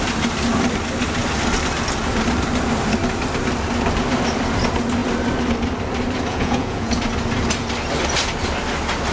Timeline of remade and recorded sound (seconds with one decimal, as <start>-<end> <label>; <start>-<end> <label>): 0.0-6.3 recorded; 6.3-7.0 remade; 7.0-9.1 recorded